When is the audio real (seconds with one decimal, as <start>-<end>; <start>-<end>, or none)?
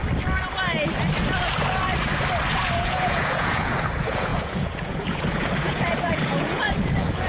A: 0.0-2.5